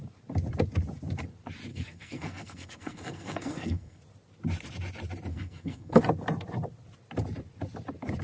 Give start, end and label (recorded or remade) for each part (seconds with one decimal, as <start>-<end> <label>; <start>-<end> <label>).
0.0-1.7 recorded; 1.7-4.0 remade; 4.0-5.3 recorded; 5.3-6.0 remade; 6.0-8.2 recorded